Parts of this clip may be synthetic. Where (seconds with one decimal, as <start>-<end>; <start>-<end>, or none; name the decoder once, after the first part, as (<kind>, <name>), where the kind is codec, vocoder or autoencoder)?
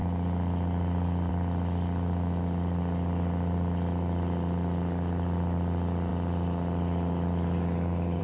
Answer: none